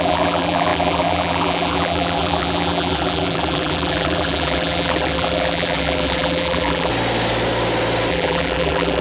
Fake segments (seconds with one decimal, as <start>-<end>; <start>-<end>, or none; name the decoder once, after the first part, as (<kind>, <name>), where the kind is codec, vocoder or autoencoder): 0.0-6.9 (vocoder, BigVGAN v2); 8.1-9.0